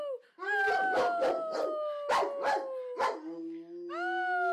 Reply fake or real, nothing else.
real